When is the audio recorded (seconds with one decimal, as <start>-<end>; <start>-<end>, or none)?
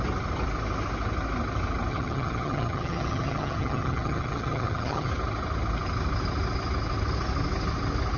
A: 0.0-1.9; 5.1-8.2